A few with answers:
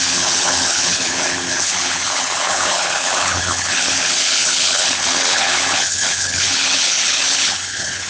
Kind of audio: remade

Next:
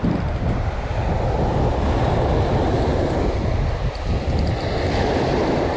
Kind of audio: recorded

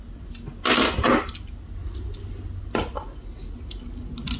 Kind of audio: recorded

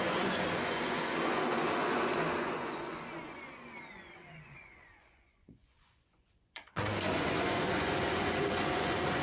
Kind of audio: remade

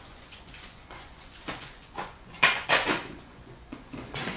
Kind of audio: remade